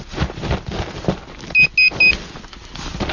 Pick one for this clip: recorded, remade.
recorded